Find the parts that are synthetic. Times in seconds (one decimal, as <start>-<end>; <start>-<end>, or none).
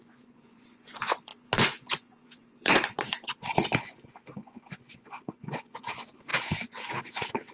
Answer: 0.0-7.5